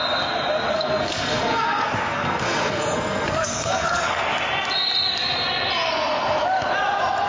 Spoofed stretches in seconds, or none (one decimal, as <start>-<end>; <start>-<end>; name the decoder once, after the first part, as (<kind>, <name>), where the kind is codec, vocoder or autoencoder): 0.7-4.2 (codec, SNAC)